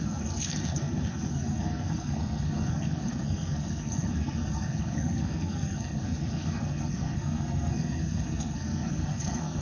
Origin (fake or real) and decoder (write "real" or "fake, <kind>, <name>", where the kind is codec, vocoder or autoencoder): fake, codec, SNAC